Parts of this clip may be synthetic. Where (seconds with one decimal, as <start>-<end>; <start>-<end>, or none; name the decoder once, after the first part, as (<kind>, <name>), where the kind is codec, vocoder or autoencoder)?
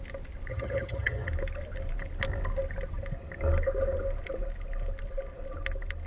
0.5-1.3 (vocoder, HiFi-GAN)